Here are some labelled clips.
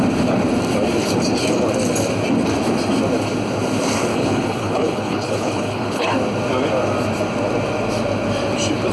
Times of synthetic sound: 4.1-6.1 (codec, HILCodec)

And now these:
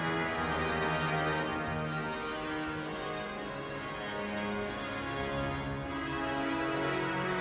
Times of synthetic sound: none

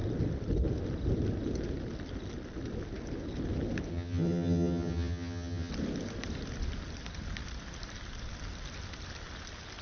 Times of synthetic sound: 3.9-5.7 (vocoder, HiFi-GAN)